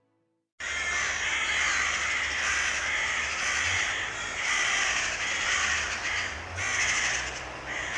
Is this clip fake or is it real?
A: real